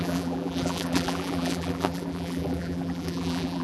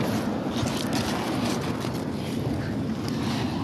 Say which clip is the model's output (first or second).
first